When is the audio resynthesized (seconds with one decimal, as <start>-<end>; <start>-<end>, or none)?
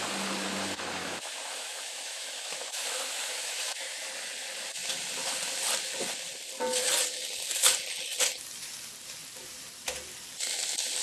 1.0-4.1